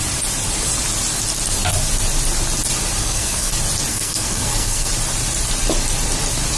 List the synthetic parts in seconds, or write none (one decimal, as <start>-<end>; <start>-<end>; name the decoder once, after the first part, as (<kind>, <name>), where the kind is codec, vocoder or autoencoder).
3.0-3.5 (codec, SNAC); 3.9-4.9